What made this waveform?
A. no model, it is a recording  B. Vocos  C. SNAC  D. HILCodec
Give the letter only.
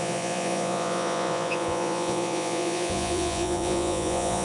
B